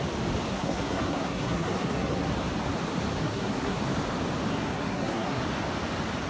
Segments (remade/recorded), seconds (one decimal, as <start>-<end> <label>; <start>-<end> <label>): 0.0-0.5 recorded; 0.5-2.3 remade; 2.3-3.2 recorded; 3.2-3.8 remade; 3.8-4.5 recorded; 4.5-5.4 remade; 5.4-6.3 recorded